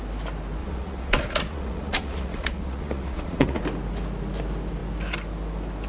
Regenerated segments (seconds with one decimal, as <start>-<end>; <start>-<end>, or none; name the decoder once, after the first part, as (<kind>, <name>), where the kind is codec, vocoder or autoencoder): 0.6-3.6 (vocoder, Vocos)